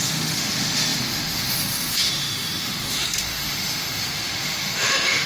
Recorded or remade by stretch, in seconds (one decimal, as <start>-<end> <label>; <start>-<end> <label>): 0.0-5.3 remade